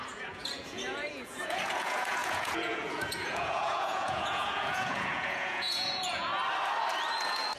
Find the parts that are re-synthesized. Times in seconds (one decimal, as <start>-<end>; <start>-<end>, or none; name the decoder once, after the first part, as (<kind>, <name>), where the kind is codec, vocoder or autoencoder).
0.0-6.3 (vocoder, Vocos); 7.1-7.6